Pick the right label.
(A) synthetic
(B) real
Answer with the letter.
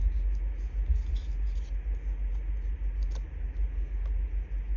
B